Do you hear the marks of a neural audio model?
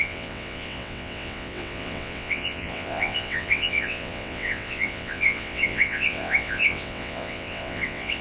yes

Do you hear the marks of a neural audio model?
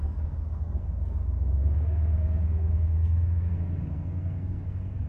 yes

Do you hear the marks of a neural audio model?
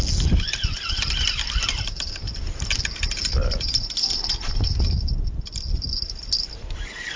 no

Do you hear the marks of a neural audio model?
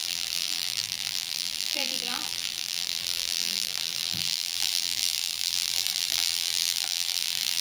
yes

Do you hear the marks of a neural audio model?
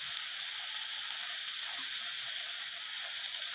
no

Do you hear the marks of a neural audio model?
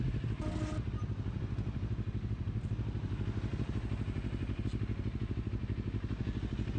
no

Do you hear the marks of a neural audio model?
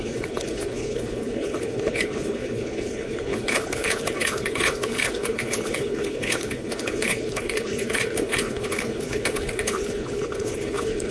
yes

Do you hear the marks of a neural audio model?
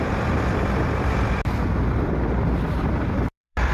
yes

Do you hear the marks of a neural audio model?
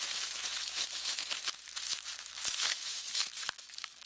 yes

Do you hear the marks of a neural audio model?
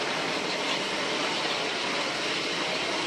no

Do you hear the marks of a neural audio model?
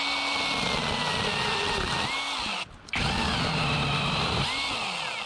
no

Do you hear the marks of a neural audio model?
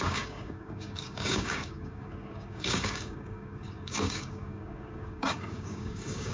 yes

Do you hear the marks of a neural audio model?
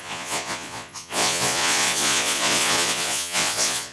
yes